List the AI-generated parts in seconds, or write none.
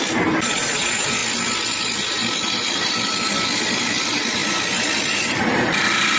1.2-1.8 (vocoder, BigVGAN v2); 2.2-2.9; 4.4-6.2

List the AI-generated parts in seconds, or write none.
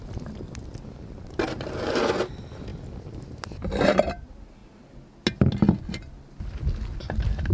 none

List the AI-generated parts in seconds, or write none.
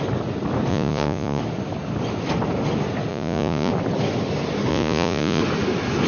0.7-1.4 (vocoder, Vocos); 3.1-3.7; 4.7-5.4